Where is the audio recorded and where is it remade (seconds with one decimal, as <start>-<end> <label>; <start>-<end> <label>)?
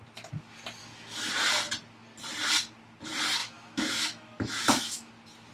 0.0-0.8 recorded; 0.8-1.3 remade; 1.3-3.4 recorded; 3.4-5.1 remade; 5.1-5.5 recorded